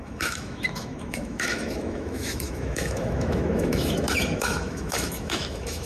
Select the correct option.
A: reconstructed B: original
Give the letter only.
A